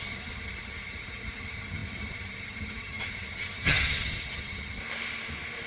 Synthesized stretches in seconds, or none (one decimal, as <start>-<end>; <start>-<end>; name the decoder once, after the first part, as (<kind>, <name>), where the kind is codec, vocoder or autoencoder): 0.0-4.8 (vocoder, HiFi-GAN)